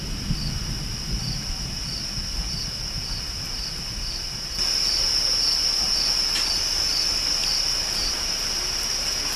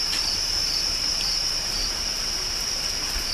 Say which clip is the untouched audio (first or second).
first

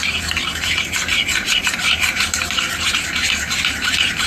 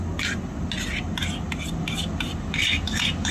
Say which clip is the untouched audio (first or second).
second